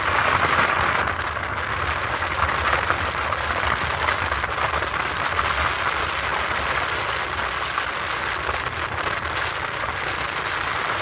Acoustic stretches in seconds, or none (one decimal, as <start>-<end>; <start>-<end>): 0.0-11.0